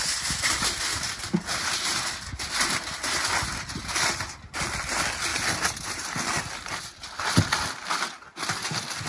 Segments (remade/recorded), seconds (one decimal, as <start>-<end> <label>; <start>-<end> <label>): 0.0-9.1 recorded

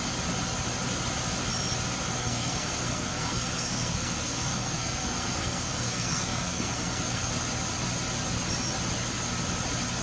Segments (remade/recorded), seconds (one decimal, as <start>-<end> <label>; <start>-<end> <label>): 0.0-2.2 recorded; 2.2-7.3 remade; 7.3-10.0 recorded